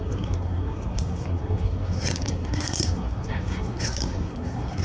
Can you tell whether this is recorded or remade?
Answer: remade